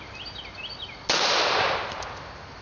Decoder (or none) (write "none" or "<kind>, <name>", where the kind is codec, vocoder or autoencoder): none